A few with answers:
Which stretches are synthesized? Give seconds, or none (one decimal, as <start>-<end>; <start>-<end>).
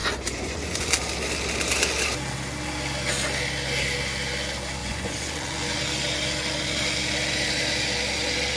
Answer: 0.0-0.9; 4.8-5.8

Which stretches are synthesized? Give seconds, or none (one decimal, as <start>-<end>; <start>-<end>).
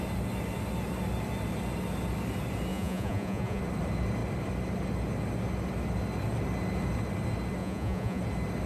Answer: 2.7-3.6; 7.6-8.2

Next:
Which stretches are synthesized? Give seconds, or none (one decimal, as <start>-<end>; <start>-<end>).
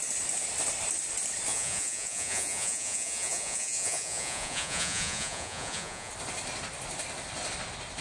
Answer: 1.5-6.1